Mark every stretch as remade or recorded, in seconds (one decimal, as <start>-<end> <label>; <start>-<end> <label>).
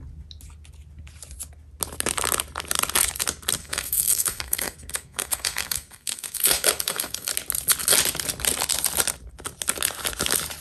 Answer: 0.0-3.6 recorded; 3.6-7.3 remade; 7.3-10.6 recorded